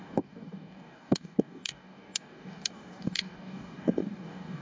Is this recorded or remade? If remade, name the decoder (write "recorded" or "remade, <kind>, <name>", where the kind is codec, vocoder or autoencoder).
remade, codec, DAC